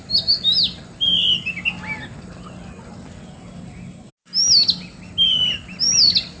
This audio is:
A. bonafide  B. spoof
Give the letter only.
A